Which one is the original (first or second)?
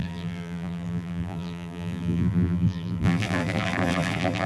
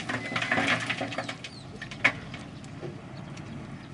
second